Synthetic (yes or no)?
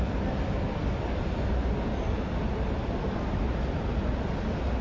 no